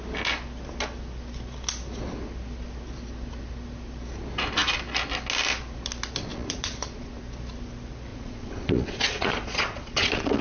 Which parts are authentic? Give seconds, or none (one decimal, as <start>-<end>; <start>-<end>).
0.0-6.3; 7.1-8.1